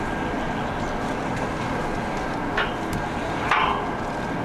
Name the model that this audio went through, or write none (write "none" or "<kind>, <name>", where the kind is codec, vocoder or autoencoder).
none